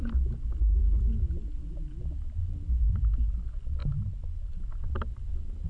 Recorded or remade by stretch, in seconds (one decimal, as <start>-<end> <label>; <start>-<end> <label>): 0.0-5.7 recorded